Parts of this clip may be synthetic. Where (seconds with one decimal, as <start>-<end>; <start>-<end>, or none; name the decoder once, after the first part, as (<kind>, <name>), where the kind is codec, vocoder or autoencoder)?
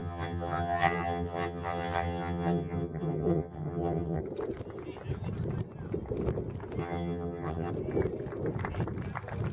0.0-4.2 (vocoder, HiFi-GAN); 6.8-7.7